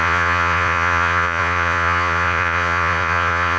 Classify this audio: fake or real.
fake